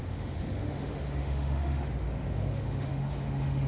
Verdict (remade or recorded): remade